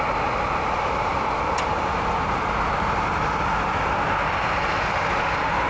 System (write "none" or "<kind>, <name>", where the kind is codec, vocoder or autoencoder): none